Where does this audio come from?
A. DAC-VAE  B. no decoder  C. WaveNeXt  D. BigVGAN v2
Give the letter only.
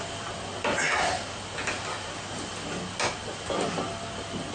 B